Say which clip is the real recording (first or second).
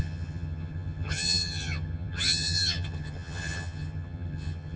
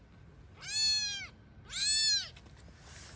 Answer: second